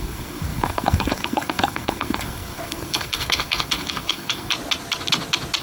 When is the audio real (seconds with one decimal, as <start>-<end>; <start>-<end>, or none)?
4.5-5.6